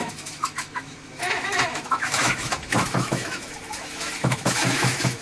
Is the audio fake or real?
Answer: fake